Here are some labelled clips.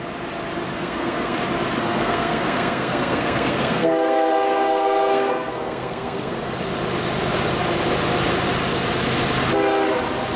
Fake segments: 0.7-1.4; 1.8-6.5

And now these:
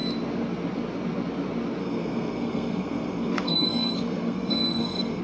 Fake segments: 1.8-5.2